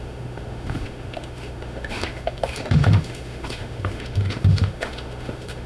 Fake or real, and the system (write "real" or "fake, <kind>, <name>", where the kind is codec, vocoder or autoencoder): fake, autoencoder, DAC-VAE